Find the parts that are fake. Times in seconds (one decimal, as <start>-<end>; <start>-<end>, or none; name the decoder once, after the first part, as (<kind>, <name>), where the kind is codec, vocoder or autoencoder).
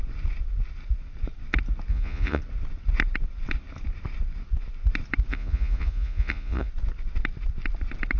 1.9-2.4 (vocoder, Vocos); 5.3-6.7